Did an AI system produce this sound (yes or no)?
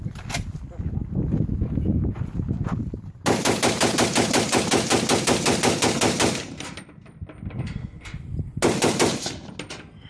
no